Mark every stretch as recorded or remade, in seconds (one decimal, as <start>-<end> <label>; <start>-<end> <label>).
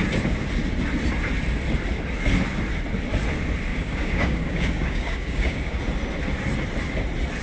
0.0-3.7 recorded; 3.7-5.8 remade; 5.8-7.4 recorded